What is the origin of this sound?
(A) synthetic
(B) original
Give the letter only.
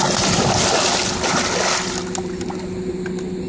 B